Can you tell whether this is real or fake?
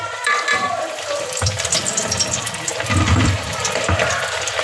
fake